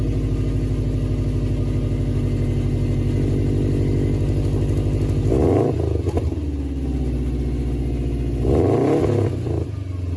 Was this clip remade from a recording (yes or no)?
no